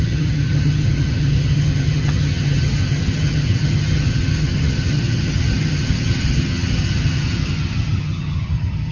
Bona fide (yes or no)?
no